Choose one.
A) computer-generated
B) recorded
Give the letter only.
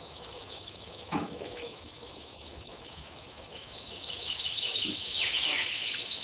A